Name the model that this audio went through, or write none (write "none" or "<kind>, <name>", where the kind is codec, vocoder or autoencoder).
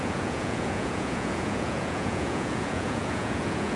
vocoder, Vocos